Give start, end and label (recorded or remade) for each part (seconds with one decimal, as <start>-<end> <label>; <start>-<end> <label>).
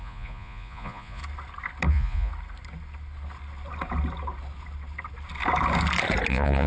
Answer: 0.0-1.2 remade; 1.2-1.9 recorded; 1.9-2.3 remade; 2.3-6.3 recorded; 6.3-6.7 remade